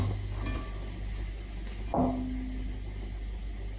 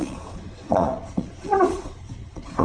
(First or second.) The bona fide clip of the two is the first